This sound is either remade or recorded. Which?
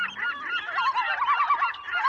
recorded